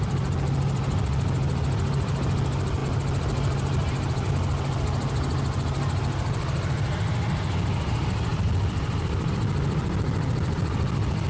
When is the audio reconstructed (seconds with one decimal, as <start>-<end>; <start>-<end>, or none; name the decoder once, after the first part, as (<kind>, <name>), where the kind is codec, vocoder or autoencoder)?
none